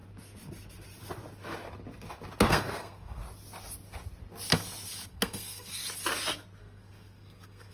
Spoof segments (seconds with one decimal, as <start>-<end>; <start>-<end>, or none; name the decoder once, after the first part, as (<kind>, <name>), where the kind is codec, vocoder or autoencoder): 2.5-3.2 (codec, SNAC); 5.1-5.8; 6.6-7.7